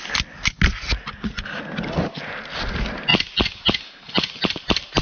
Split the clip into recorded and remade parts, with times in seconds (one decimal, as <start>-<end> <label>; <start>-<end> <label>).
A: 0.0-5.0 recorded